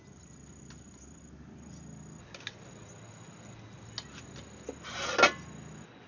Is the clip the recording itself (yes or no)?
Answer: yes